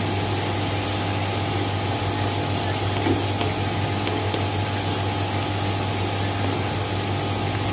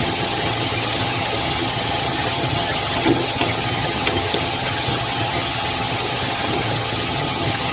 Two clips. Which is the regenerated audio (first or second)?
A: second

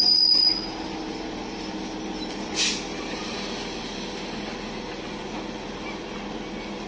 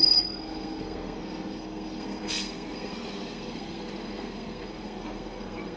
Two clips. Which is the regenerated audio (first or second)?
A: second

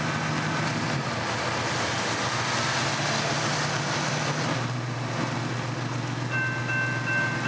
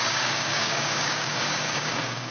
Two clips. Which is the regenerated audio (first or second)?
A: second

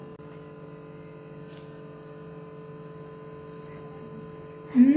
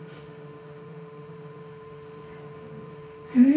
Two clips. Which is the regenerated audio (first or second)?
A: second